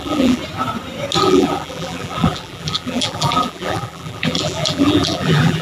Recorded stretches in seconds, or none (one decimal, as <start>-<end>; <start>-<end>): 0.4-1.2